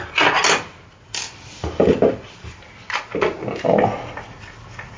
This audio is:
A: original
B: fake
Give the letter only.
A